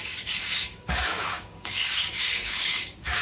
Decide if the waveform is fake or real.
fake